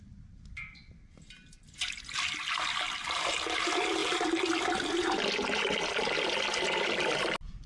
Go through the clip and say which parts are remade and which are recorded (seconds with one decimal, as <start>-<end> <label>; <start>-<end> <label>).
0.0-7.7 recorded